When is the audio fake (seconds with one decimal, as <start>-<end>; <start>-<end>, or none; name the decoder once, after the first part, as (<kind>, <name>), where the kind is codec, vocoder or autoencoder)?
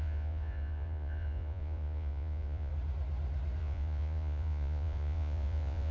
0.0-2.7 (vocoder, Vocos); 3.6-5.9